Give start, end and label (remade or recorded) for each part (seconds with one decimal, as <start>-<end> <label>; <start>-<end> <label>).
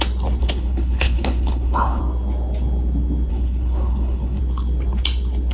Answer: 0.0-0.4 recorded; 0.4-2.0 remade; 2.0-3.3 recorded; 3.3-4.4 remade; 4.4-5.5 recorded